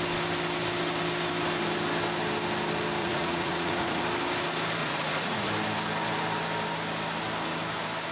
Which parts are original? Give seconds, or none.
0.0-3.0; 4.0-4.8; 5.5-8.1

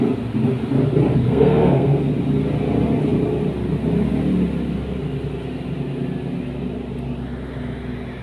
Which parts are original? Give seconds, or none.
0.0-1.1; 2.1-8.2

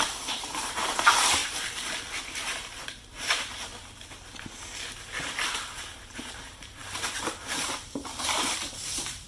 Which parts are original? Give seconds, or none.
3.7-5.0

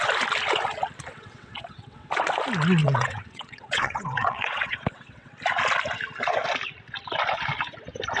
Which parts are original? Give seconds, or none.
0.0-1.1; 2.1-2.8; 5.3-8.2

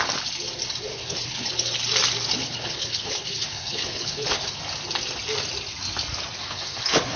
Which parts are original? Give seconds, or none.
0.0-0.9; 1.5-2.4; 4.6-6.4

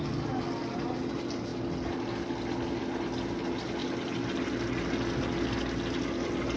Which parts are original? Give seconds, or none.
0.0-6.6

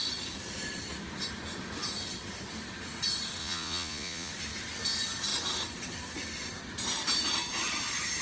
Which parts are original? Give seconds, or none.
0.0-3.4; 4.3-8.2

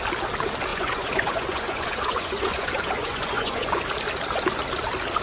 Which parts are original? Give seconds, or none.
0.0-0.7; 3.8-5.2